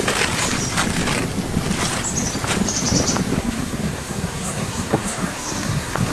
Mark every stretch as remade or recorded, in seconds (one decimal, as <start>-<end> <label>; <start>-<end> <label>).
0.0-3.4 recorded; 3.4-6.1 remade